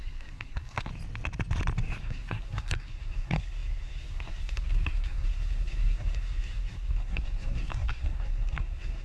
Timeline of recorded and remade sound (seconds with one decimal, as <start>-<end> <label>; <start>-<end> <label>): 0.0-0.9 remade; 0.9-2.0 recorded; 2.0-9.0 remade